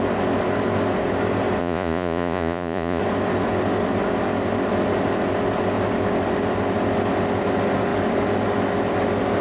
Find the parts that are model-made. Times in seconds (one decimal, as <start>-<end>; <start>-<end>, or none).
1.6-3.0